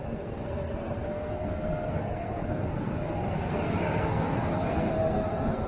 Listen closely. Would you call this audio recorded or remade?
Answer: remade